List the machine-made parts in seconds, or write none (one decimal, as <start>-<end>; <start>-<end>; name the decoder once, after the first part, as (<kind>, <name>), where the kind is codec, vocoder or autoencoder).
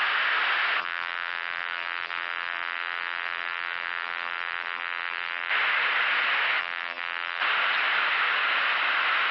0.8-5.5 (vocoder, BigVGAN v2); 6.6-7.4